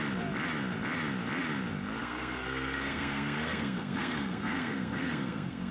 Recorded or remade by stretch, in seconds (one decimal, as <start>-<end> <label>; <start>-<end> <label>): 0.0-2.0 recorded; 2.0-5.7 remade